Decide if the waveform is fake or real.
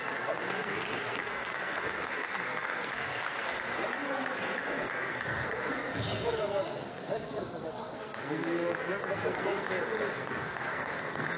fake